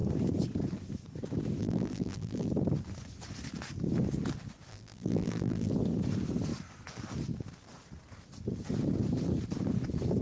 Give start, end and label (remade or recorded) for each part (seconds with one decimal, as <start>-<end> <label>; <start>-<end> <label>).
0.0-1.6 recorded; 1.6-2.5 remade; 2.5-4.7 recorded; 4.7-5.7 remade; 5.7-10.2 recorded